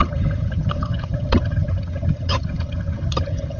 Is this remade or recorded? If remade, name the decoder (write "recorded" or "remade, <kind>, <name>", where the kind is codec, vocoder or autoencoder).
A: remade, vocoder, HiFi-GAN